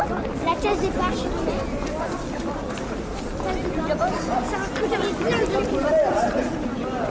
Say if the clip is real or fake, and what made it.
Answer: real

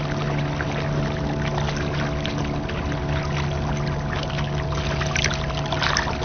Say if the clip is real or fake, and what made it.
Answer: real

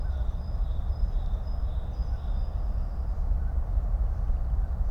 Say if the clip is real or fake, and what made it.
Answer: fake, vocoder, BigVGAN v2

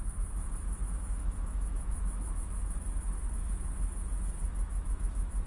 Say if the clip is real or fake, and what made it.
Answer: fake, autoencoder, DAC-VAE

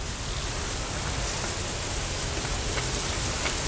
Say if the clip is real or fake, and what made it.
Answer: real